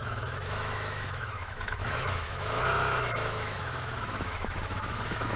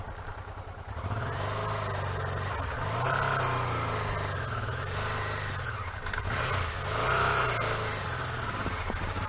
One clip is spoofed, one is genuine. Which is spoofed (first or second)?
first